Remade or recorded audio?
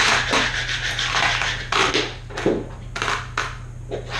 recorded